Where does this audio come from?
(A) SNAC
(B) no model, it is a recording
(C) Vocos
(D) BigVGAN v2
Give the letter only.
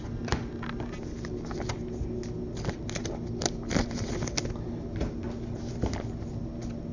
B